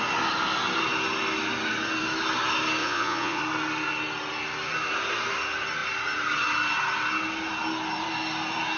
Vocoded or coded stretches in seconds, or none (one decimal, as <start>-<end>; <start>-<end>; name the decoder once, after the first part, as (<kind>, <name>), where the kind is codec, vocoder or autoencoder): 2.8-3.4 (vocoder, Vocos)